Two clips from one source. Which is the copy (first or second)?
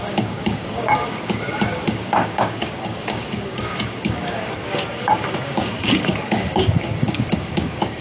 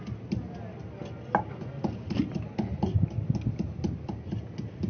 first